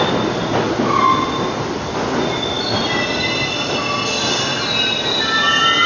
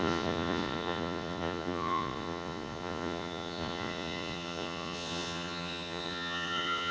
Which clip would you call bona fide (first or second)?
first